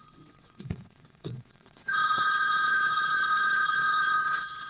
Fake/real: fake